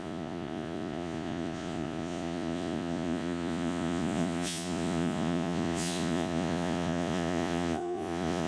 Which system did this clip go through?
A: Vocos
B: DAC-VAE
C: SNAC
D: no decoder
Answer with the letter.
A